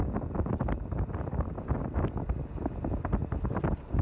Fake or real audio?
real